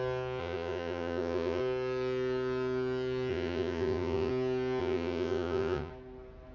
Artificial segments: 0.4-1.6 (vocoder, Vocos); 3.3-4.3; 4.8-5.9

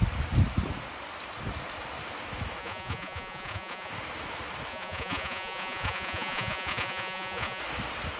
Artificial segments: 2.6-3.9 (vocoder, Vocos); 4.7-7.6

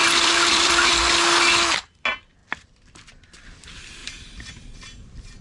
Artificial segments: 0.0-1.0 (vocoder, BigVGAN v2)

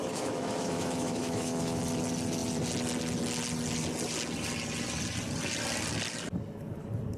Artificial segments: 0.0-1.8 (autoencoder, DAC-VAE)

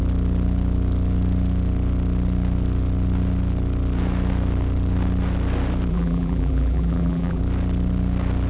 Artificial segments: 5.9-7.4 (vocoder, BigVGAN v2)

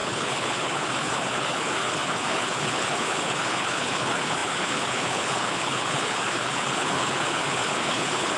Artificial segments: 0.0-8.4 (codec, HILCodec)